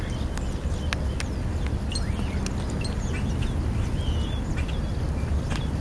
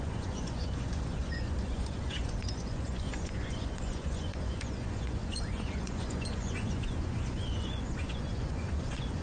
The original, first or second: first